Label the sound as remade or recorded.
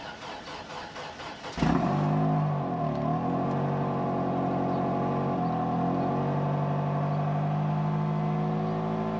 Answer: recorded